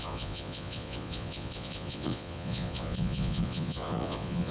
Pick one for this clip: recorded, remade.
remade